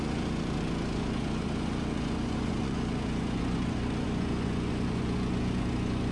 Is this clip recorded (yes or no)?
no